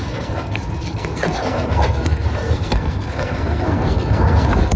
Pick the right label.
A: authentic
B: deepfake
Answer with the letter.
B